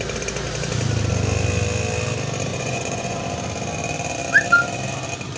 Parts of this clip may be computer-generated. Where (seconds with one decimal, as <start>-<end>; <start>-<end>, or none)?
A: 2.5-3.2